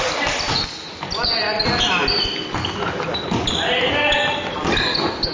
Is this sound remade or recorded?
recorded